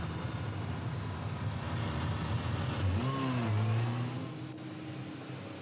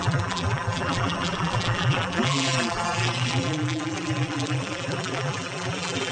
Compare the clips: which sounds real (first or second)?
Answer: first